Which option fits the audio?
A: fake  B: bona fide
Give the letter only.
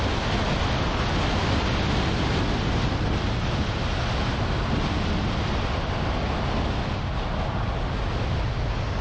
B